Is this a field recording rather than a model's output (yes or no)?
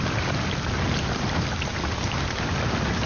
yes